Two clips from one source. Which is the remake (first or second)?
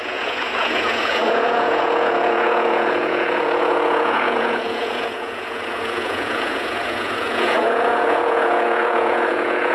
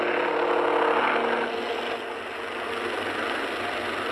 first